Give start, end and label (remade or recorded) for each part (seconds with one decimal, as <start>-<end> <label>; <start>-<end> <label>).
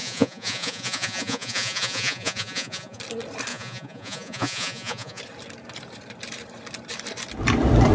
0.0-3.0 remade; 3.0-3.5 recorded; 3.5-5.2 remade; 5.2-7.9 recorded